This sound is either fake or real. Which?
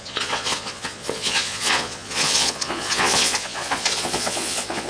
fake